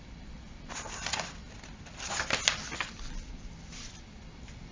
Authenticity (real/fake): fake